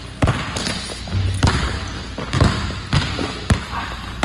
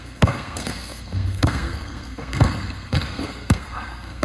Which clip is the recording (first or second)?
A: first